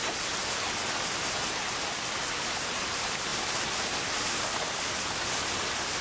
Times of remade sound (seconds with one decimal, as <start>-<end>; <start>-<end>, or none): none